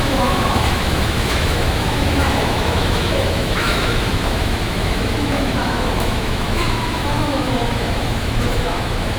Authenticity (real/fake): fake